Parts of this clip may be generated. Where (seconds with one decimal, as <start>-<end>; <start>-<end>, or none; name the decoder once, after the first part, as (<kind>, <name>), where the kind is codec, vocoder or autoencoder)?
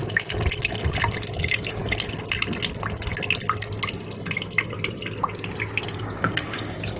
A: 1.4-1.8 (codec, DAC); 6.0-7.0